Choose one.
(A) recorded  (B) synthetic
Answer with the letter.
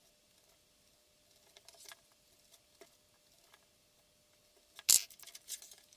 A